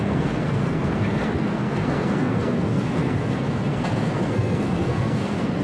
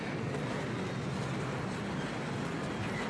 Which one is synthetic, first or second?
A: first